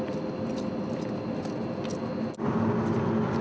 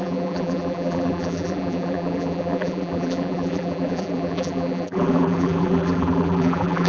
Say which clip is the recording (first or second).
first